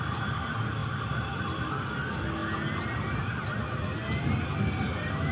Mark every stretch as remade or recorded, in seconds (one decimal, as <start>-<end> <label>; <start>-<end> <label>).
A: 0.0-0.8 recorded; 0.8-1.7 remade; 1.7-5.3 recorded